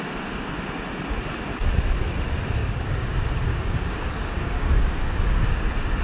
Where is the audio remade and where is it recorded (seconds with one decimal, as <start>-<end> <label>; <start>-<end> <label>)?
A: 0.0-2.6 recorded; 2.6-3.1 remade; 3.1-3.5 recorded; 3.5-5.5 remade; 5.5-6.0 recorded